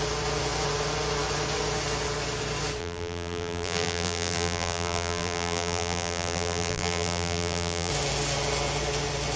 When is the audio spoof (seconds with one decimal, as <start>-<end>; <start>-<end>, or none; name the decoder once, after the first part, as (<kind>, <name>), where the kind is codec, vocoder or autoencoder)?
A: 2.8-7.9 (vocoder, BigVGAN v2)